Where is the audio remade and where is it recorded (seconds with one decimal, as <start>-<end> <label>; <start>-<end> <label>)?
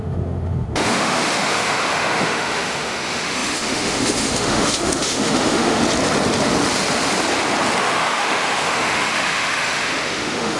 0.0-5.8 remade; 5.8-7.8 recorded; 7.8-10.6 remade